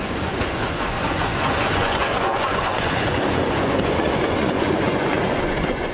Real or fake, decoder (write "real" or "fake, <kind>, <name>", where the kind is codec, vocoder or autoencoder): fake, vocoder, Vocos